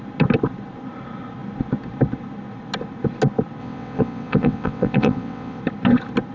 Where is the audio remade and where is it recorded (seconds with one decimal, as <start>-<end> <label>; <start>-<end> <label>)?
0.0-3.6 recorded; 3.6-5.6 remade; 5.6-6.3 recorded

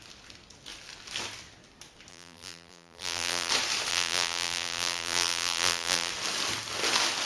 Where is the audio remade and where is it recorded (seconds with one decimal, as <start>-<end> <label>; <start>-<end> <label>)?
0.0-2.1 recorded; 2.1-3.5 remade; 3.5-3.9 recorded; 3.9-6.1 remade; 6.1-7.3 recorded

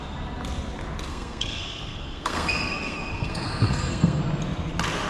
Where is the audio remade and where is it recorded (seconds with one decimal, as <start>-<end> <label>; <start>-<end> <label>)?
0.0-1.1 recorded; 1.1-4.2 remade; 4.2-5.1 recorded

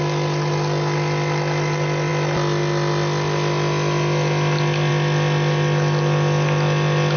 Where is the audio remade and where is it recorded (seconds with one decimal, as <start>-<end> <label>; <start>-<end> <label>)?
0.0-7.2 recorded

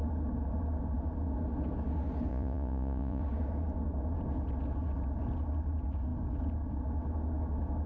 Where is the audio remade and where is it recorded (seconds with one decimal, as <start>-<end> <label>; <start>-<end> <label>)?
0.0-2.3 recorded; 2.3-3.2 remade; 3.2-7.9 recorded

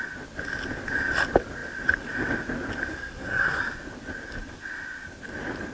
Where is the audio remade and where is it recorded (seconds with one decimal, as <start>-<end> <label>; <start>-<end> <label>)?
0.0-2.9 recorded; 2.9-3.6 remade; 3.6-5.7 recorded

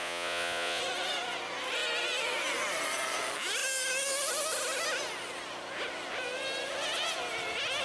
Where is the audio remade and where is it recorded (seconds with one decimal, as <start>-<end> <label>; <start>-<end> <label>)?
0.0-0.8 remade; 0.8-7.8 recorded